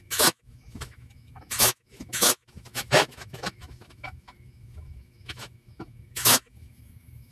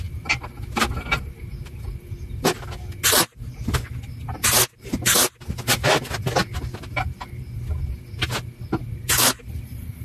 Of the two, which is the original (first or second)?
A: second